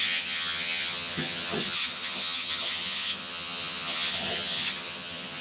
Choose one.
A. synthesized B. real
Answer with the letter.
A